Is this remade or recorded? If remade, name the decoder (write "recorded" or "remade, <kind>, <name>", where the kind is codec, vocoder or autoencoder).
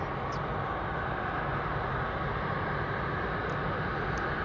recorded